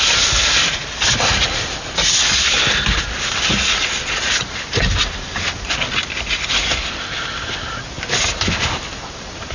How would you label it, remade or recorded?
recorded